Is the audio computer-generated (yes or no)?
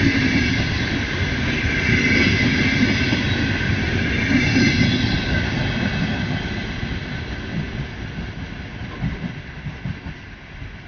no